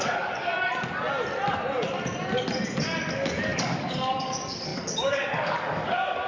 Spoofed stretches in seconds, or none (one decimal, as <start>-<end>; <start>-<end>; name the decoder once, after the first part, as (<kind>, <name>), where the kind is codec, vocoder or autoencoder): 0.0-0.5 (codec, DAC); 3.1-6.3